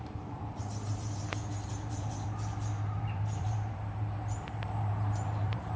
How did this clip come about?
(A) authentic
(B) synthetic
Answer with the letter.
B